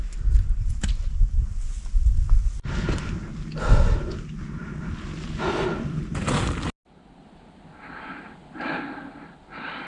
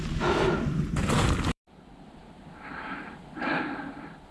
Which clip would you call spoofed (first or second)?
second